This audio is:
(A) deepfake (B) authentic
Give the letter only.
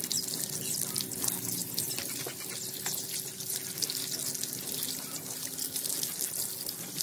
B